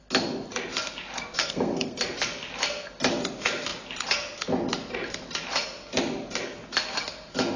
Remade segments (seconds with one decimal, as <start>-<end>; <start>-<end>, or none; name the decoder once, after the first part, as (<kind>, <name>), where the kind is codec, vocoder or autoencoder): 1.4-2.0 (codec, SNAC)